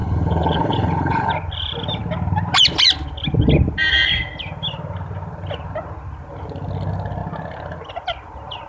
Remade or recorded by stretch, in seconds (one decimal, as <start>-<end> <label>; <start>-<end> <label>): 0.0-1.3 remade; 1.3-8.7 recorded